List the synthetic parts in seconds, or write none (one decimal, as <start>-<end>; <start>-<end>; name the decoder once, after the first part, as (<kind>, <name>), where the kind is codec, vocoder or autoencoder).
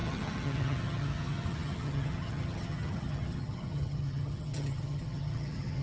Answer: 0.0-5.8 (vocoder, HiFi-GAN)